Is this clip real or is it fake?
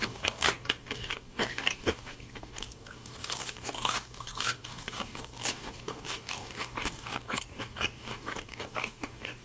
fake